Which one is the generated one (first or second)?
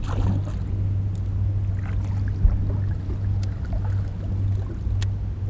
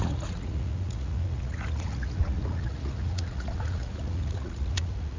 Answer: second